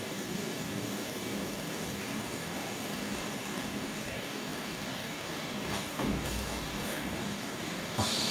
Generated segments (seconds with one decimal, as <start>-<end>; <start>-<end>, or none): 0.0-8.3